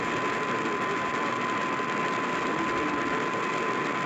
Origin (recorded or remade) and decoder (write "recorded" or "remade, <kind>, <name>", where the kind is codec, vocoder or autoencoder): recorded